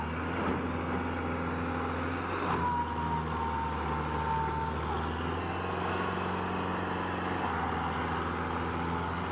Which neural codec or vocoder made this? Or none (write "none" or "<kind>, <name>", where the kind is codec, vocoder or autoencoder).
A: none